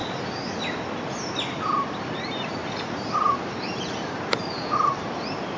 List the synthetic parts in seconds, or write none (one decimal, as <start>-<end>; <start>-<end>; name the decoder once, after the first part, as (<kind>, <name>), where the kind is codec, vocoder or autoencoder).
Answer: 2.2-5.6 (vocoder, BigVGAN v2)